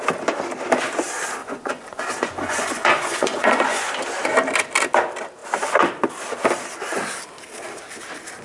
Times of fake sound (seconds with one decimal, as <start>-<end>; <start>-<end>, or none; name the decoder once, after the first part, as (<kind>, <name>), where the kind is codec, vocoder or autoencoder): 1.4-3.9 (vocoder, Vocos)